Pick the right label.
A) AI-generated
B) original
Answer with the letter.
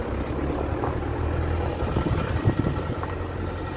B